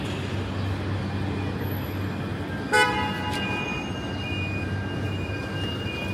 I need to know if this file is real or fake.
real